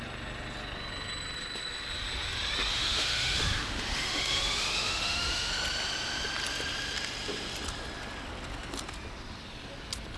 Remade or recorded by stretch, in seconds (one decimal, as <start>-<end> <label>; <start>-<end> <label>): 0.0-2.7 recorded; 2.7-5.5 remade; 5.5-10.2 recorded